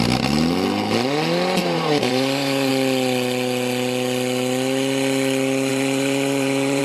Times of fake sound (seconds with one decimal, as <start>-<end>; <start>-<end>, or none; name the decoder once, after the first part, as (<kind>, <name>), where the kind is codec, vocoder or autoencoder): 1.6-2.7 (vocoder, BigVGAN v2); 5.7-6.8